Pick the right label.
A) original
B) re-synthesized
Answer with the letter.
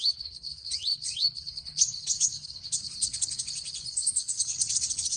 B